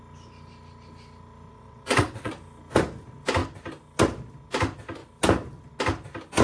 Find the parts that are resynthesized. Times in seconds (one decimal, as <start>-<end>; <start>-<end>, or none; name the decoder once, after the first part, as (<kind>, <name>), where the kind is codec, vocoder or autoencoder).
1.5-2.3 (vocoder, WaveNeXt)